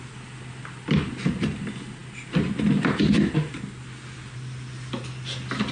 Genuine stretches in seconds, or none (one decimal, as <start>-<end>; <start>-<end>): 0.0-5.7

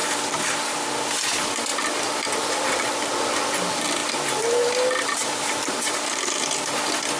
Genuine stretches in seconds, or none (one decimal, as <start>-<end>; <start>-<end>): 0.9-4.0; 6.7-7.2

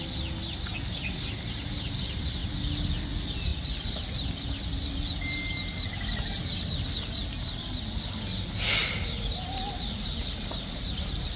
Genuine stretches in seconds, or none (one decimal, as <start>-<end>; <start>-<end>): 0.0-8.8

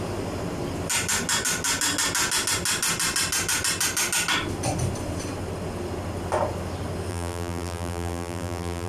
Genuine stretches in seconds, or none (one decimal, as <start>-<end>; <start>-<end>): 0.0-7.1

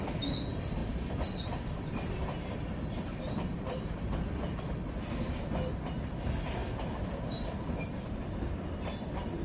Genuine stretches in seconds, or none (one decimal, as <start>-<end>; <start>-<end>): 0.0-0.8; 5.1-9.4

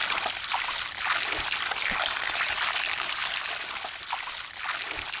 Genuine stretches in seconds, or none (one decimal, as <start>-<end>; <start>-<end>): 0.0-5.2

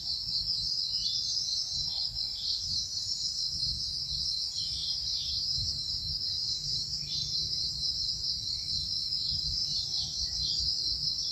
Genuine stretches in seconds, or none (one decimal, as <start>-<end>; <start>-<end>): 0.0-2.3; 3.6-4.8; 7.7-9.6; 10.5-11.3